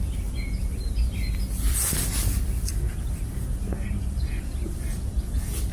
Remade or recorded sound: recorded